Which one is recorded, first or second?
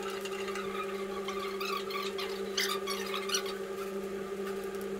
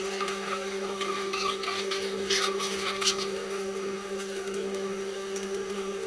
first